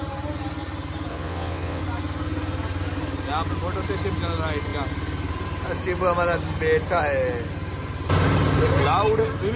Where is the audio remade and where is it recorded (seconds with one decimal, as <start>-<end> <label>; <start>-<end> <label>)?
0.0-1.1 recorded; 1.1-1.8 remade; 1.8-9.6 recorded